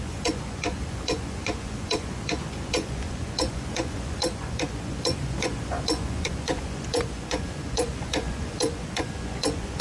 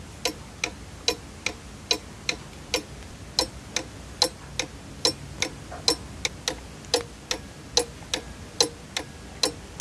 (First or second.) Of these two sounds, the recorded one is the second